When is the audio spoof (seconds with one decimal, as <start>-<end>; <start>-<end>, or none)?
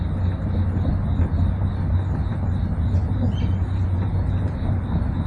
none